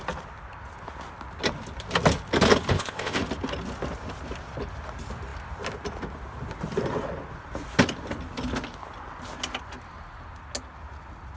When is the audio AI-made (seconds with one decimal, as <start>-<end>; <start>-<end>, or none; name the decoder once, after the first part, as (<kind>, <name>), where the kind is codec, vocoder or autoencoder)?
2.7-3.2 (codec, ZipCodec)